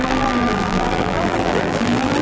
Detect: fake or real fake